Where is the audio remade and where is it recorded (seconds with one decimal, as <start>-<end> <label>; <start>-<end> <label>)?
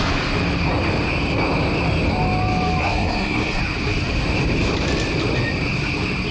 0.0-2.8 recorded; 2.8-3.6 remade; 3.6-6.3 recorded